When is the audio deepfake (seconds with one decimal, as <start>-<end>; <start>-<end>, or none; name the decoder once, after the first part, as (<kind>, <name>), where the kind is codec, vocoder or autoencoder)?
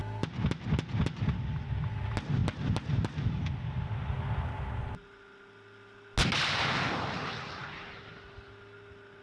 none